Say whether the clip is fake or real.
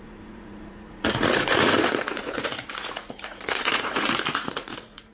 fake